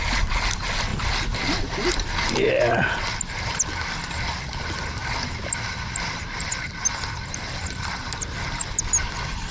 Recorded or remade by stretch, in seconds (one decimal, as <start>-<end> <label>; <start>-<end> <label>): 0.0-9.5 recorded